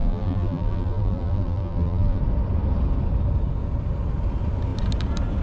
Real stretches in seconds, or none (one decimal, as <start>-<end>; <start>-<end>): 2.2-5.4